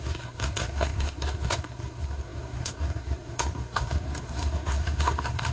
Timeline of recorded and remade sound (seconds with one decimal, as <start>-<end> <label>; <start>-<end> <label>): 0.0-5.5 remade